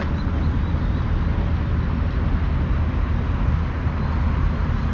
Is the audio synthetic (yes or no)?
no